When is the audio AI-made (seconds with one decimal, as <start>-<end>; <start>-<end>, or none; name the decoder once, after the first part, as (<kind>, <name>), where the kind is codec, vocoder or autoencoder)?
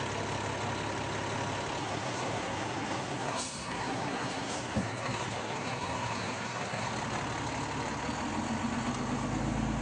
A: 1.8-6.9 (codec, SNAC)